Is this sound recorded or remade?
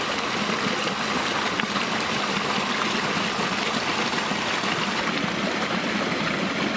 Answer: recorded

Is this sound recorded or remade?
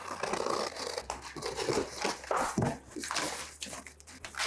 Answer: recorded